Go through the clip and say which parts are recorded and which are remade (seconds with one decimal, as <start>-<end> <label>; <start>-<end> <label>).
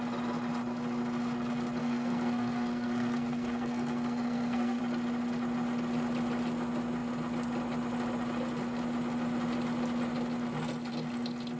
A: 0.0-1.8 recorded; 1.8-4.8 remade; 4.8-11.6 recorded